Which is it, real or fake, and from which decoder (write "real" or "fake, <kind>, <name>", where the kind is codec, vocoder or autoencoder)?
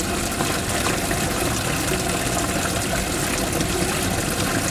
real